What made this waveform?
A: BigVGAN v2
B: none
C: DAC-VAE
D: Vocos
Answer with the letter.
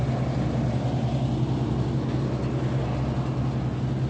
B